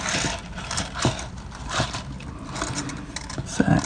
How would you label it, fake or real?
real